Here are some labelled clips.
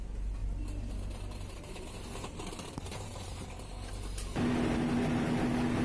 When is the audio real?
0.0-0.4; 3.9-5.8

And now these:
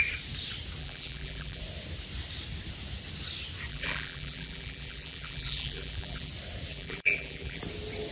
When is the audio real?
0.0-0.8; 1.6-3.7; 6.3-6.7; 7.6-8.1

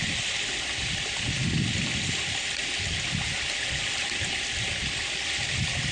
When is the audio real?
0.0-5.9

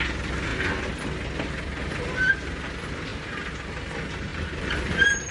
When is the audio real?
0.0-4.3

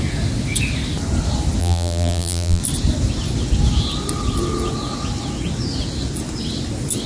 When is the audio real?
0.0-1.6; 2.6-7.1

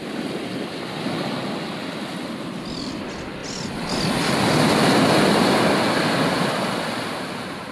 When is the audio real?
0.0-7.7